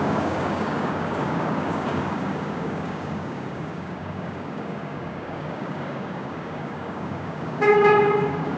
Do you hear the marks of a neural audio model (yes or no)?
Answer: yes